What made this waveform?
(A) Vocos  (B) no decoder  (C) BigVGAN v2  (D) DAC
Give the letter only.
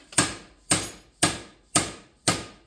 B